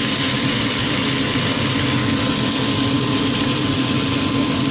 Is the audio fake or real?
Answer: real